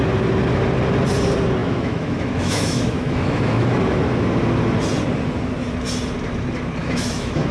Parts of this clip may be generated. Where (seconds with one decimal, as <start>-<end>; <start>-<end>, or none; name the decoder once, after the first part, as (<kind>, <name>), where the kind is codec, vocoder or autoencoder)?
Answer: 1.6-3.8 (autoencoder, DAC-VAE); 6.8-7.5